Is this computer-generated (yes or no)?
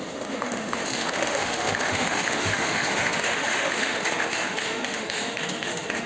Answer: yes